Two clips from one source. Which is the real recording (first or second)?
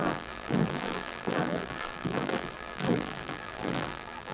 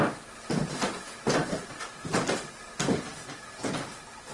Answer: second